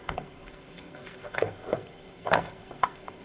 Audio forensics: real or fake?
fake